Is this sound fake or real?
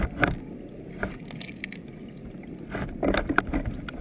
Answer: real